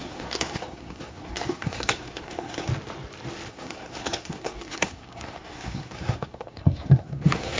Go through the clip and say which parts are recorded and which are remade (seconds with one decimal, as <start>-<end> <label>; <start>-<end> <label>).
0.0-2.7 remade; 2.7-3.5 recorded; 3.5-7.6 remade